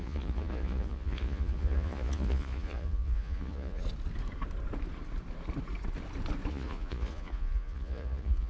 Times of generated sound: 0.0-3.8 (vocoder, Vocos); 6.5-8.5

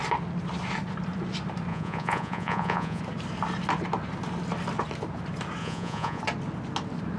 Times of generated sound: 1.7-3.0 (vocoder, Vocos); 5.6-6.2